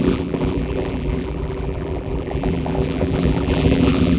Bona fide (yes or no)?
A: no